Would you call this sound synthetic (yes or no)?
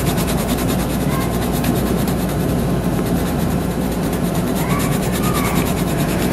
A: yes